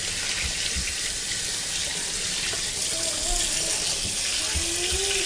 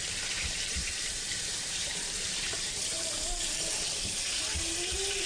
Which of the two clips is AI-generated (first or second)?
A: second